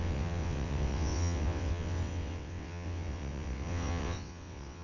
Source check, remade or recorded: remade